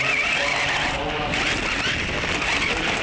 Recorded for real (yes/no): yes